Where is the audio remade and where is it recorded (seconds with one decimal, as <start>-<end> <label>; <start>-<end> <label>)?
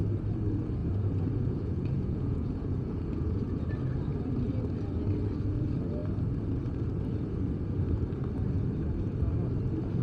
0.0-0.8 recorded; 0.8-3.6 remade; 3.6-10.0 recorded